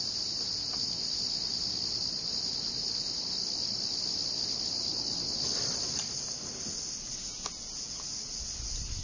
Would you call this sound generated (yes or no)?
no